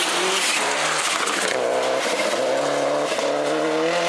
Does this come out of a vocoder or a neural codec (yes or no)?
no